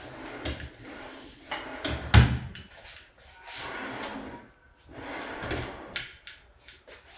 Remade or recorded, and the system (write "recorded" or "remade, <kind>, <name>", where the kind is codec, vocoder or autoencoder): recorded